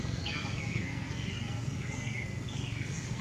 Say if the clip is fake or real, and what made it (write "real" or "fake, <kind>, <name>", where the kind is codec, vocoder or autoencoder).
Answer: fake, codec, SNAC